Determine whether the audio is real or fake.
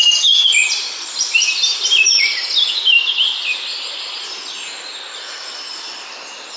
real